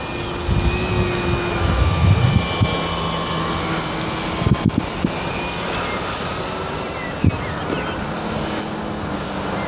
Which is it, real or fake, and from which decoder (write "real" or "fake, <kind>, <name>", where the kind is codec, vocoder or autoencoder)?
real